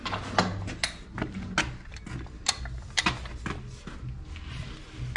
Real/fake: real